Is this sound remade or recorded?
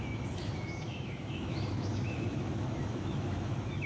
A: remade